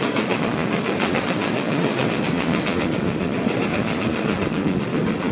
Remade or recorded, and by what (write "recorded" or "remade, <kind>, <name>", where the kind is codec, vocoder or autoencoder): remade, vocoder, Vocos